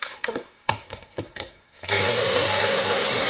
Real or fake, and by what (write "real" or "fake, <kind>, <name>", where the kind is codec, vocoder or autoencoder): fake, codec, SNAC